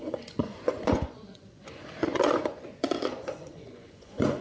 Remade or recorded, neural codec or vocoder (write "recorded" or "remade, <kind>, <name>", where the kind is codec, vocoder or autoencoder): remade, vocoder, Vocos